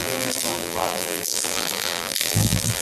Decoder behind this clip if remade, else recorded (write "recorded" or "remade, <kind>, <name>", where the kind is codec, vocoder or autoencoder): remade, vocoder, BigVGAN v2